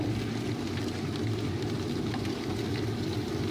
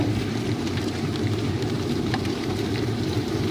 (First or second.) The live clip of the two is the first